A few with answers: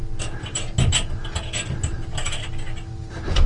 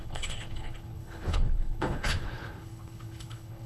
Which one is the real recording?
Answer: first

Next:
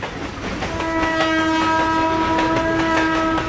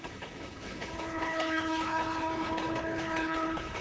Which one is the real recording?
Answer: first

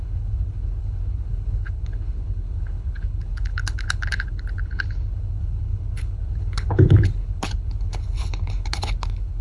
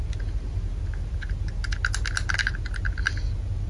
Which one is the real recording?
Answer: second